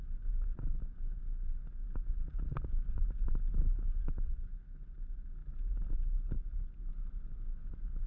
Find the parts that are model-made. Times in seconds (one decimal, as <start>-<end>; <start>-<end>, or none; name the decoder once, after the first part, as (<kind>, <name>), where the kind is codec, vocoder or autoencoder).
none